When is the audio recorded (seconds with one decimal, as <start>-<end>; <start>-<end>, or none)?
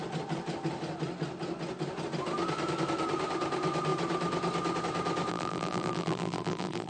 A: 0.0-5.3